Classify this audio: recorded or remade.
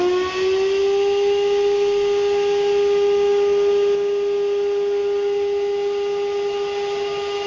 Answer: recorded